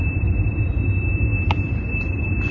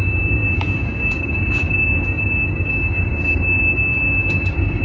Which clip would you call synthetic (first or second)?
second